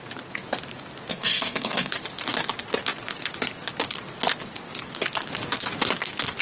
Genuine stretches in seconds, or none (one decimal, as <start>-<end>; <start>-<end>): 0.0-1.1; 1.9-6.4